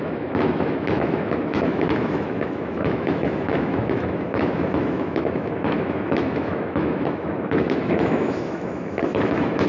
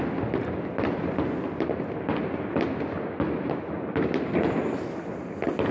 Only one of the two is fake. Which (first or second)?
first